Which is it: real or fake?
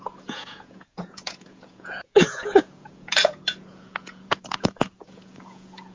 fake